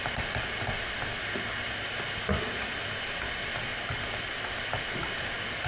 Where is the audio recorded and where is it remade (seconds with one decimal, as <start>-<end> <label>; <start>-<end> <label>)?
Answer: 0.0-3.7 recorded; 3.7-4.5 remade; 4.5-5.7 recorded